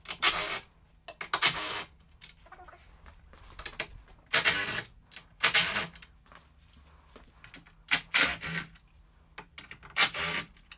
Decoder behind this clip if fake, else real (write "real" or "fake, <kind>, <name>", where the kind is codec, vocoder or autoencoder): real